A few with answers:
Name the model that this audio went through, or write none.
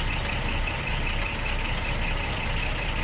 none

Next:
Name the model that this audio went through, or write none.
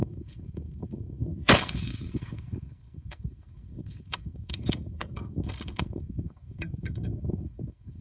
codec, SNAC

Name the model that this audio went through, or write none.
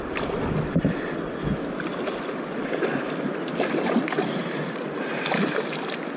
none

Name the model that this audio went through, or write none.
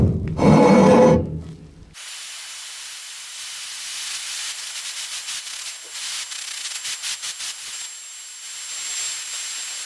none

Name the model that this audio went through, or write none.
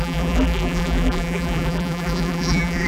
vocoder, BigVGAN v2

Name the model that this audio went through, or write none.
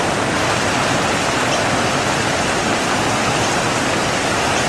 none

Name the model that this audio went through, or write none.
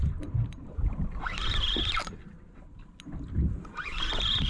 none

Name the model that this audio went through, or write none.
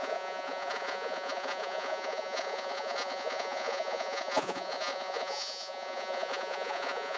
vocoder, Vocos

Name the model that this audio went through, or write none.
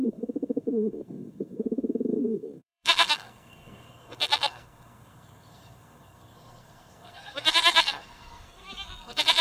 codec, SNAC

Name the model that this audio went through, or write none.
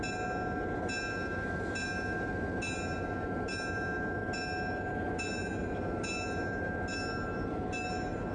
none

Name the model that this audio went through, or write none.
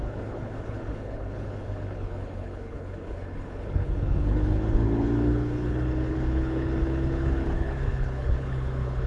codec, HILCodec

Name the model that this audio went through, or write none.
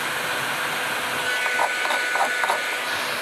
none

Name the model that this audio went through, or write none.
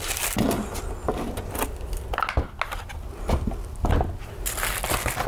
none